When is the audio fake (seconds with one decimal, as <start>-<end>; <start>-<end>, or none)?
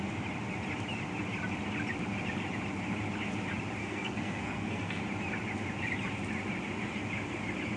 3.8-5.0